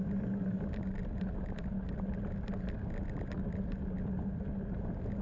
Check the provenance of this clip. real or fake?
real